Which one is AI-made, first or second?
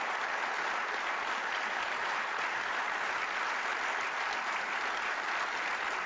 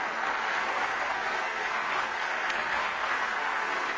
second